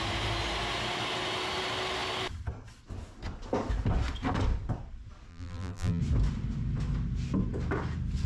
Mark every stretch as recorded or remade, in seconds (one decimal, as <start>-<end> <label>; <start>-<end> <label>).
0.0-5.3 recorded; 5.3-6.0 remade; 6.0-8.3 recorded